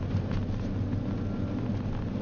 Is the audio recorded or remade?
recorded